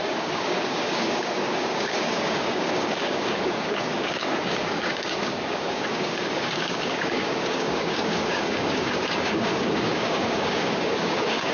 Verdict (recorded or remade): remade